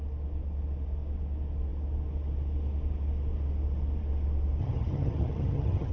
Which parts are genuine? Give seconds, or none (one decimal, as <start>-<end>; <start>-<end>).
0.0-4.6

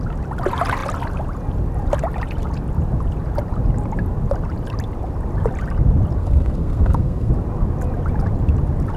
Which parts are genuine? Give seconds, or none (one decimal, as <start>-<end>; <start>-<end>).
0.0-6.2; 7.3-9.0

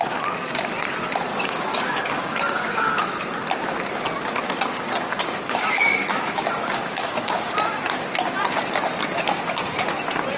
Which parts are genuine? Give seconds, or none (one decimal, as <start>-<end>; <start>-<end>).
0.0-1.3; 3.0-4.4; 7.5-10.4

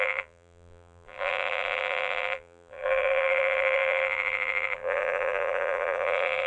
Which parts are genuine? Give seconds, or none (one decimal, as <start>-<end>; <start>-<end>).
none

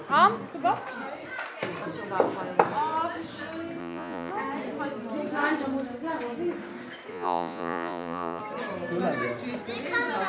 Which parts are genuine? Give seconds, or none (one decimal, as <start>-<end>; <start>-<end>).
0.0-3.8; 4.3-7.1; 8.4-10.3

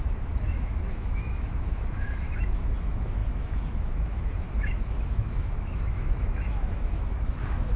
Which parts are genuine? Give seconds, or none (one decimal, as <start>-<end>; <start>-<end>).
none